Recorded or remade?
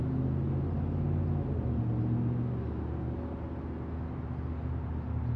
recorded